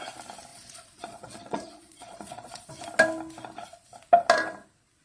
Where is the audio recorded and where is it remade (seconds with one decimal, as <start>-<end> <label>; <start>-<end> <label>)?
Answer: 0.0-0.5 recorded; 0.5-2.7 remade; 2.7-5.0 recorded